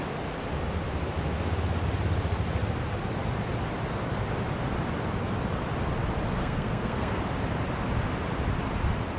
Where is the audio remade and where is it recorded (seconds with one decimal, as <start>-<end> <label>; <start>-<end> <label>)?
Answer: 0.0-6.4 recorded; 6.4-7.2 remade; 7.2-9.2 recorded